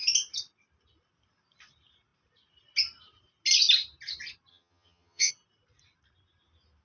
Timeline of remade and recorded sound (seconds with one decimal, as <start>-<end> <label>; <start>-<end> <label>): 0.0-4.5 recorded; 4.5-5.3 remade; 5.3-6.8 recorded